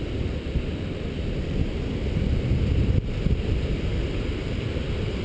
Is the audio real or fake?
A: fake